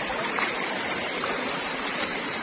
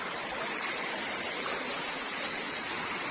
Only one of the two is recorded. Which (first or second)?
second